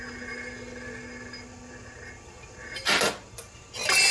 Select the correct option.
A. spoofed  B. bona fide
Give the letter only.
B